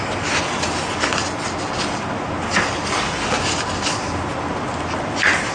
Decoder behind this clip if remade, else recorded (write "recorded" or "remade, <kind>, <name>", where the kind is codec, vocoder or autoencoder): recorded